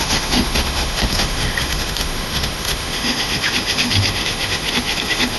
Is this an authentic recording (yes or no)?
no